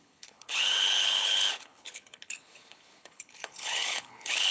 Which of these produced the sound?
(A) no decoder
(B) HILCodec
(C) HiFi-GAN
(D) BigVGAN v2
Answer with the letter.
B